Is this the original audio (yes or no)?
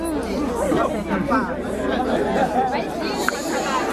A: no